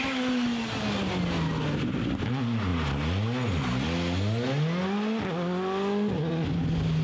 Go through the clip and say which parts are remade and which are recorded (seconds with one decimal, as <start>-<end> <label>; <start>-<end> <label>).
0.0-7.0 recorded

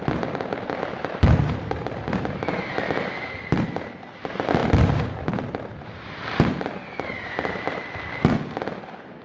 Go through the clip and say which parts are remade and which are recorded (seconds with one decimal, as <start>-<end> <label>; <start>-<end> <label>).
0.0-9.2 recorded

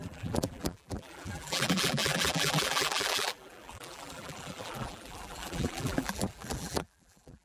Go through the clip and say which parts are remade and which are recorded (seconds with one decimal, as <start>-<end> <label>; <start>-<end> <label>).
0.0-7.4 remade

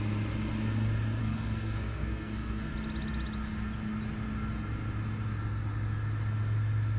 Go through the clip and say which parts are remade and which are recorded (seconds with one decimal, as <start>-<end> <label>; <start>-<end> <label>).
0.0-1.2 recorded; 1.2-2.7 remade; 2.7-7.0 recorded

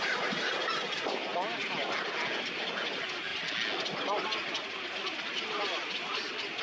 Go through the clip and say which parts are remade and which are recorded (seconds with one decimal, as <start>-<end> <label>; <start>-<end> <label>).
0.0-6.6 recorded

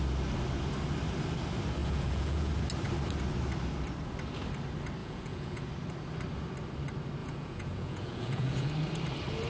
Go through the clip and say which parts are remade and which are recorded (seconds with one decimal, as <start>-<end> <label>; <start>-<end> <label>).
0.0-1.8 recorded; 1.8-2.5 remade; 2.5-5.0 recorded; 5.0-5.6 remade; 5.6-7.2 recorded; 7.2-8.7 remade; 8.7-9.5 recorded

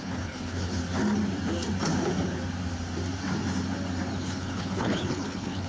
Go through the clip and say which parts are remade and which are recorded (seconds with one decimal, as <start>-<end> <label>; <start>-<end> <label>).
0.0-0.8 remade; 0.8-4.2 recorded; 4.2-5.7 remade